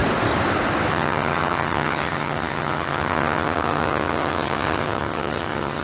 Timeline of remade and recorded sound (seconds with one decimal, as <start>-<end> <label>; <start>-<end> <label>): 0.0-0.9 recorded; 0.9-5.8 remade